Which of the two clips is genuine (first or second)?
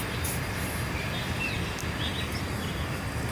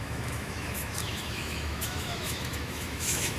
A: first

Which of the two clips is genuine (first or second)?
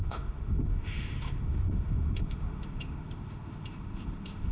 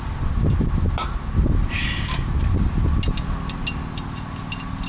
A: second